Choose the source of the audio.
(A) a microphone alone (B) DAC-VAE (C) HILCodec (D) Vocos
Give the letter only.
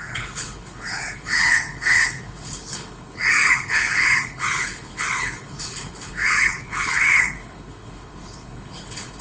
C